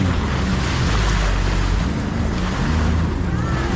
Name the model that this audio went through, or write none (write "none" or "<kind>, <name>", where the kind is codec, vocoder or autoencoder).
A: none